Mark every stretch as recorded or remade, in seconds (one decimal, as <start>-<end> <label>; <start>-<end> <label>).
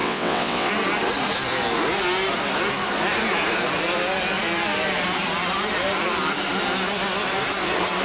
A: 0.0-0.7 remade; 0.7-8.0 recorded